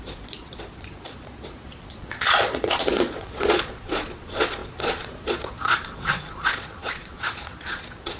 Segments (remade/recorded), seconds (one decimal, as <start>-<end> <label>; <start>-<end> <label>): 0.0-8.2 remade